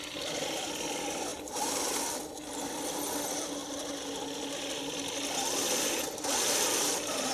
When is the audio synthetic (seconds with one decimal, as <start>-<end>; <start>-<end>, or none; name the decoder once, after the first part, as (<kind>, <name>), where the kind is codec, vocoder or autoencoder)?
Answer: none